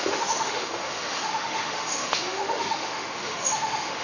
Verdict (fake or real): fake